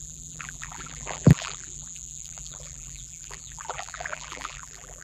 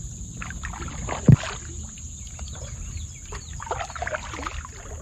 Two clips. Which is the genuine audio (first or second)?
second